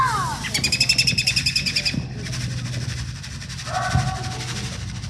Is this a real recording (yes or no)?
yes